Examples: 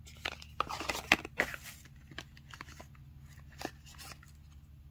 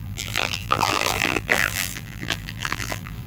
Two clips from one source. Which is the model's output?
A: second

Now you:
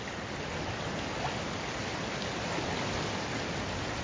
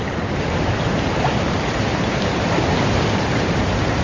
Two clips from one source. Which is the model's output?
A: second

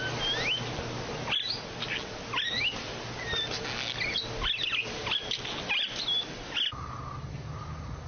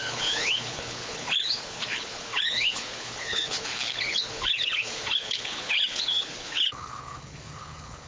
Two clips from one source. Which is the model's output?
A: second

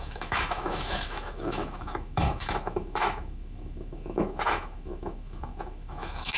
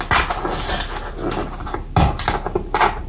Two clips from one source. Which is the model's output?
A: first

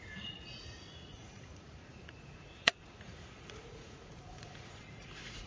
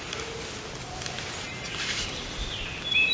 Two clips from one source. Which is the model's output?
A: first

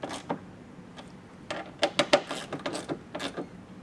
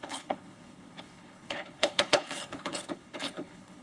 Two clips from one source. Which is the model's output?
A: second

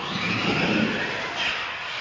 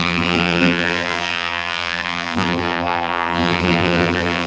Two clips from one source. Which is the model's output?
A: second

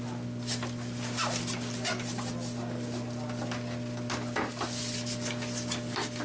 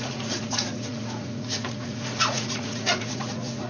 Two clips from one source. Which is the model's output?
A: second